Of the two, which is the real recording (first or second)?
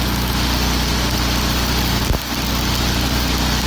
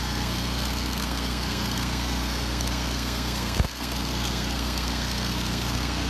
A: first